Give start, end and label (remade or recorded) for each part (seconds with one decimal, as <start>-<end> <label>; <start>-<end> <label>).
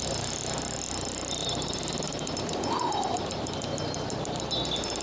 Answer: 0.0-1.4 recorded; 1.4-4.4 remade; 4.4-5.0 recorded